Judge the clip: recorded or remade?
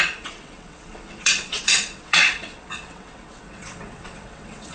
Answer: remade